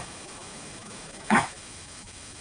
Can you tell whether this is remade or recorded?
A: remade